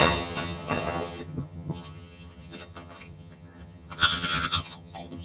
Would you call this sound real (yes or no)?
no